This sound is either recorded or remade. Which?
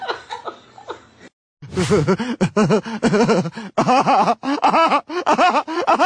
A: recorded